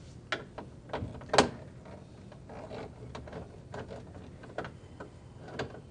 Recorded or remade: recorded